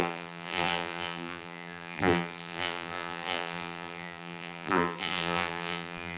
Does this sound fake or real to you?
fake